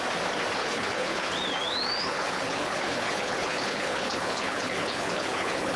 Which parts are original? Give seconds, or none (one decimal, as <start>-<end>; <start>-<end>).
0.0-0.6; 1.3-2.0